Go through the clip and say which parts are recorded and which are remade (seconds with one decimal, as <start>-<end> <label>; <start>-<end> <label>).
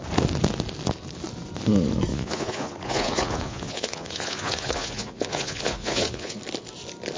0.0-2.1 recorded; 2.1-6.4 remade; 6.4-7.2 recorded